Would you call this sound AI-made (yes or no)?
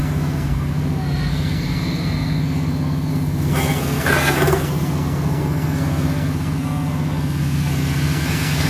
yes